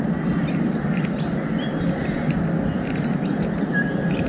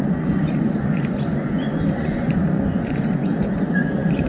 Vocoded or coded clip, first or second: second